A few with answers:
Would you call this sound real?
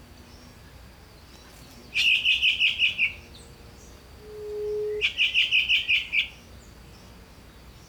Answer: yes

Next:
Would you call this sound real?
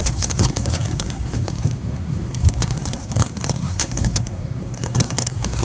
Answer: no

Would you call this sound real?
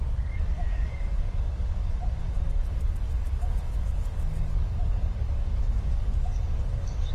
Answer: no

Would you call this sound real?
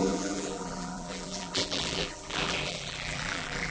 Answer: no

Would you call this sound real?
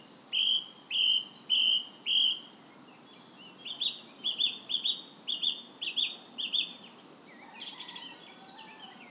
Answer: yes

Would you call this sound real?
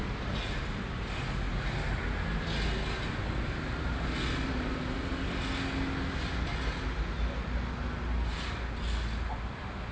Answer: yes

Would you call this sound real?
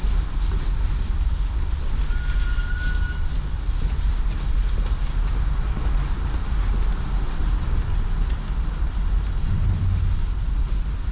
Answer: yes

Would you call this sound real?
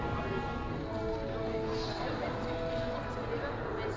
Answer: yes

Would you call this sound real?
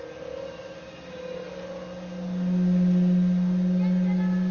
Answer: yes